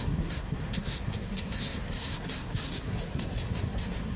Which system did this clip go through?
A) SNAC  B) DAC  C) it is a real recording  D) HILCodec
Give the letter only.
A